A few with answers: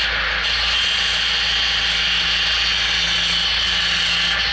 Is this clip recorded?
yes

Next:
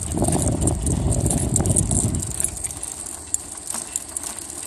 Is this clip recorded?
yes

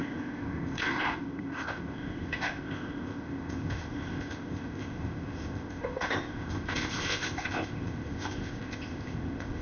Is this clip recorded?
no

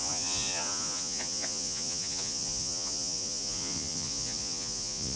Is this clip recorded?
no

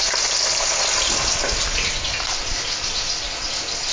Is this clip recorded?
yes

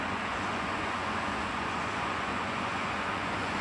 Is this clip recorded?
no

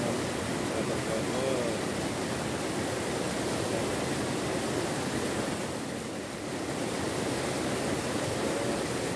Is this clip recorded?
yes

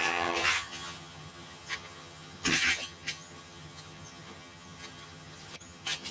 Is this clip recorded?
no